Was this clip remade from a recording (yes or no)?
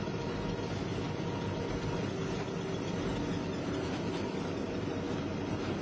no